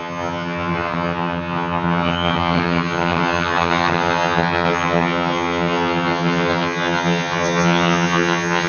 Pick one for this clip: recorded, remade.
remade